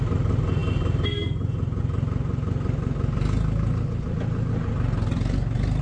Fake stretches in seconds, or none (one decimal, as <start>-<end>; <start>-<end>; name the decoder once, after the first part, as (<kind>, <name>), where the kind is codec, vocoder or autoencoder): none